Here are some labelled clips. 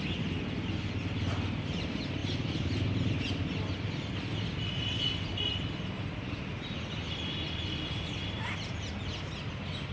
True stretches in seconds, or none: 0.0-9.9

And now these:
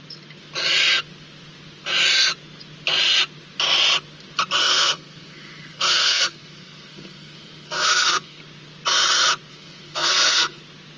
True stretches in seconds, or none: 0.0-4.6; 8.4-9.5; 10.6-11.0

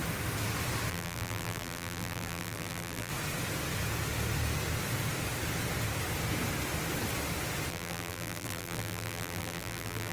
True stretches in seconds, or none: 0.0-0.9; 3.1-7.7

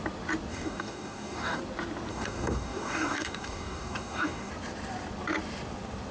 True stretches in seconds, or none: 0.0-0.5; 1.6-2.1; 4.5-6.1

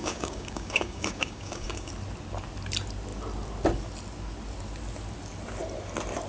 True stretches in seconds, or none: 1.9-6.3

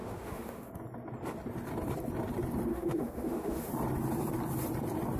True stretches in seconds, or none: 0.7-2.7; 3.7-5.2